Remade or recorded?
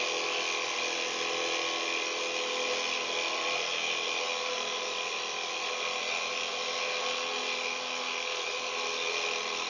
recorded